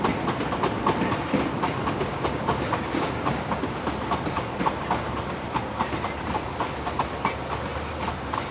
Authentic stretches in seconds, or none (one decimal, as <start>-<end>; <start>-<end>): 0.0-2.1; 3.8-8.5